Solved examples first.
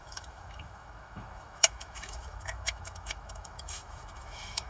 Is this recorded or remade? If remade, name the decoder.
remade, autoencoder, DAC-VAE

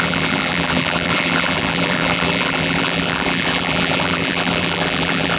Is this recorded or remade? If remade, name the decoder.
remade, vocoder, BigVGAN v2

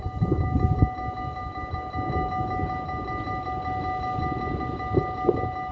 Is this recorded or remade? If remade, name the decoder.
recorded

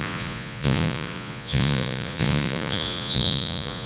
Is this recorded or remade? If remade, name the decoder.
remade, vocoder, Vocos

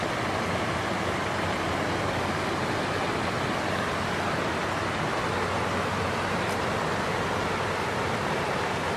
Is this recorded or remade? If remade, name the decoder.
recorded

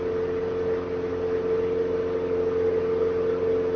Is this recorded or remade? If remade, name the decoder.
recorded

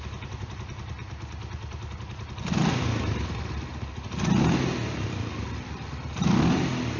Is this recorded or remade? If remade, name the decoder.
recorded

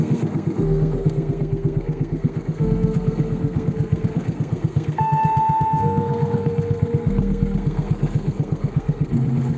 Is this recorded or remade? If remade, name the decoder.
remade, codec, SNAC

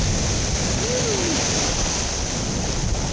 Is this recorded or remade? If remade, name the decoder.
recorded